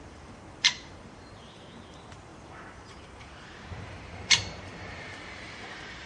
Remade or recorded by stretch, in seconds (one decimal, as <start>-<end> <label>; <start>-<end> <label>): 0.0-6.1 remade